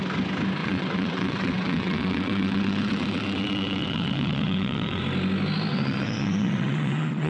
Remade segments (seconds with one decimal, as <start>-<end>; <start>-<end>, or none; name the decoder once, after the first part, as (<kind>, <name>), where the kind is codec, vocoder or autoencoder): 0.6-5.0 (vocoder, WaveNeXt); 5.7-7.3